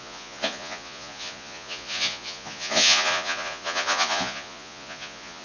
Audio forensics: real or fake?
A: fake